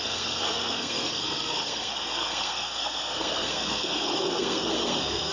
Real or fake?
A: fake